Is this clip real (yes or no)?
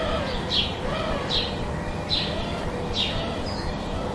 yes